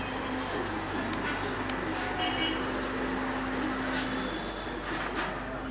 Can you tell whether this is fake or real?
real